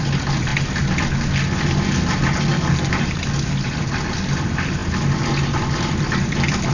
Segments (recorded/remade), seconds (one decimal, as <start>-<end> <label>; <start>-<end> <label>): 0.0-6.7 recorded